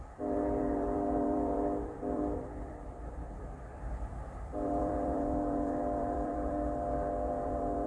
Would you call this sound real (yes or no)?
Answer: no